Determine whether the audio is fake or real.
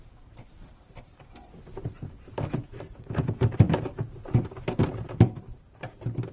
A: fake